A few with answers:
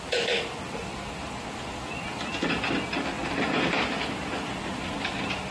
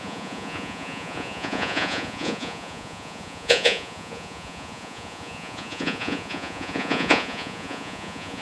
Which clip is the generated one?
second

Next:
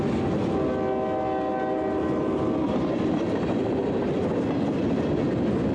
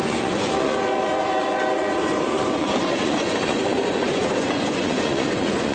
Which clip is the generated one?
second